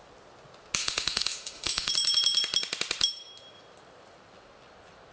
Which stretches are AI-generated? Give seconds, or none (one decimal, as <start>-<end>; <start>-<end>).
0.8-1.9